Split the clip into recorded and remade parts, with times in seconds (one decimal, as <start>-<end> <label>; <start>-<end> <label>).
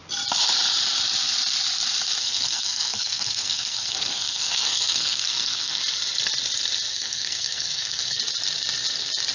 0.0-2.2 recorded; 2.2-5.8 remade; 5.8-6.9 recorded; 6.9-8.2 remade; 8.2-9.3 recorded